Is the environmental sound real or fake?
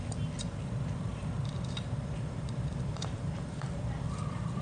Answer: fake